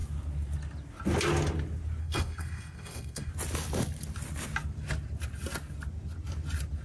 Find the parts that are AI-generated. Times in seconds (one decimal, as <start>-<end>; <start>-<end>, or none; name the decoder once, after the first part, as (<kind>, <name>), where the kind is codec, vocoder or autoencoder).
2.0-3.3 (codec, SNAC)